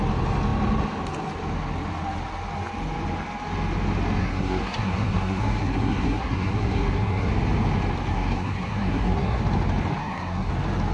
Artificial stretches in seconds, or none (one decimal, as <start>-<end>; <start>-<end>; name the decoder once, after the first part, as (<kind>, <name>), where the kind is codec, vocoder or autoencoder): 4.2-7.3 (codec, SNAC); 8.1-9.4; 10.0-10.5